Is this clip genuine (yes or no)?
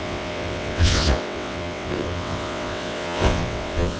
no